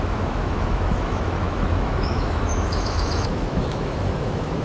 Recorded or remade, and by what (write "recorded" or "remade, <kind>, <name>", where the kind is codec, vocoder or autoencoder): remade, autoencoder, DAC-VAE